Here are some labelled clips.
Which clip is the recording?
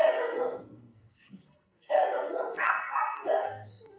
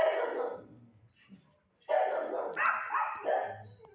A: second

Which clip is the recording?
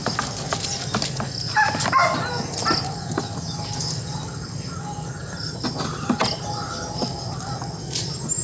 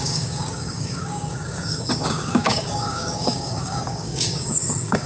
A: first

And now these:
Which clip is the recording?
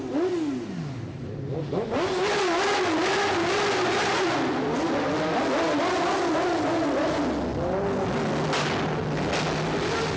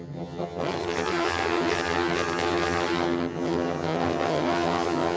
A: first